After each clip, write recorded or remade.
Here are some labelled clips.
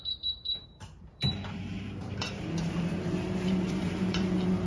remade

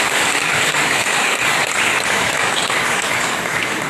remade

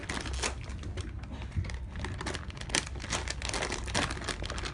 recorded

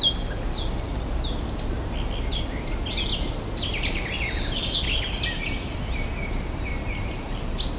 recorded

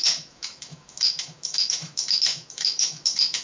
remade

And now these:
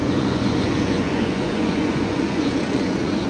remade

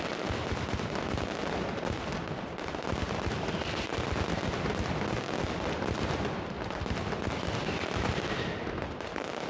recorded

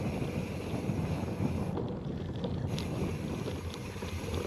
recorded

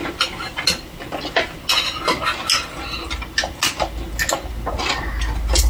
recorded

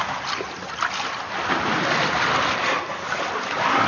recorded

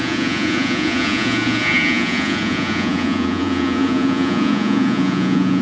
remade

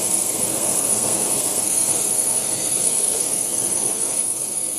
remade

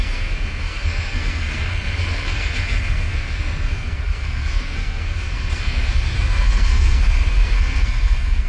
remade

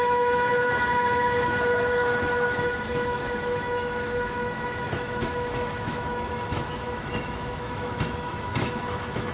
remade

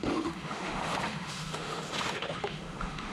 remade